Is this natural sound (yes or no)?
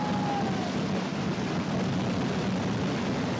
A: yes